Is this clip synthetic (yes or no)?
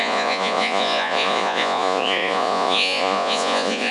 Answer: yes